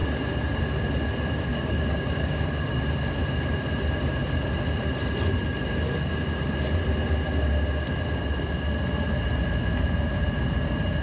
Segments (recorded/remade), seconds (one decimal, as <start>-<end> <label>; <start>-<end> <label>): 0.0-1.5 recorded; 1.5-2.8 remade; 2.8-11.0 recorded